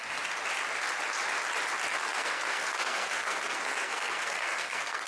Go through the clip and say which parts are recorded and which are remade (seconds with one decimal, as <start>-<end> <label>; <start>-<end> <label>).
0.0-1.9 recorded; 1.9-5.1 remade